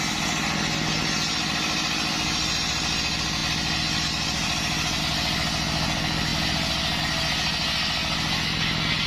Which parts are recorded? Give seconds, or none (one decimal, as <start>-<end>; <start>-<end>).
0.0-9.1